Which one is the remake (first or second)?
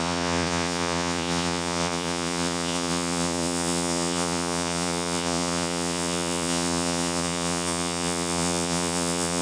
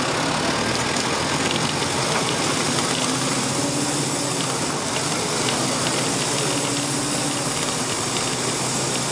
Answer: first